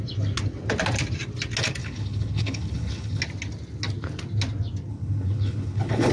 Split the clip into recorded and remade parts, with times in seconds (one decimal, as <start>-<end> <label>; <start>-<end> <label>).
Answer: 0.0-1.8 recorded; 1.8-3.2 remade; 3.2-4.9 recorded; 4.9-6.1 remade